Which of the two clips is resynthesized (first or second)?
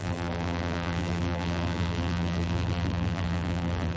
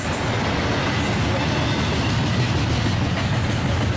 first